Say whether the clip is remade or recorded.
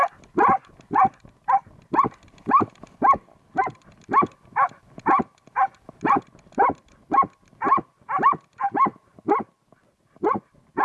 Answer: recorded